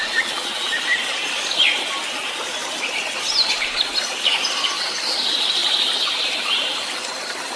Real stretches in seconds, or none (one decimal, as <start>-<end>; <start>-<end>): 0.8-7.6

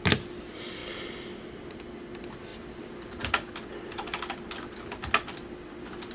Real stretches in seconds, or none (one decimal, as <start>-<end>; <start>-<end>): 0.0-6.1

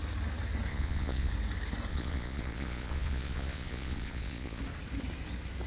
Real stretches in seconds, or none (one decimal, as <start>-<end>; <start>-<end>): 0.0-0.7; 1.3-1.9; 4.6-5.7

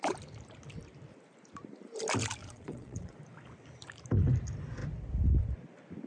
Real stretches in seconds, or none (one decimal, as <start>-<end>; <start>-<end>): 0.0-2.4; 3.2-6.1

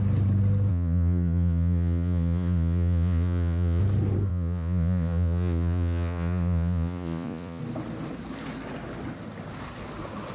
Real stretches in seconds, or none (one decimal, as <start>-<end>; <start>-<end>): 0.0-0.7; 3.8-4.3; 7.6-10.3

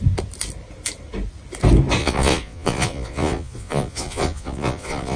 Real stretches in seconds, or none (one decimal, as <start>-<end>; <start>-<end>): 0.0-2.0